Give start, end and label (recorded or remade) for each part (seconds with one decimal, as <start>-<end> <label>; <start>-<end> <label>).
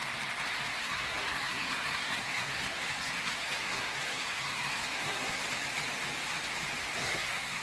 0.0-0.8 recorded; 0.8-5.4 remade; 5.4-7.0 recorded; 7.0-7.6 remade